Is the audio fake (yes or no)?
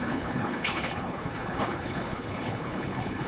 yes